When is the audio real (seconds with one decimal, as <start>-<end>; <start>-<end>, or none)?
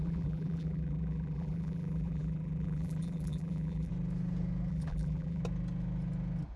3.9-4.7; 5.4-6.6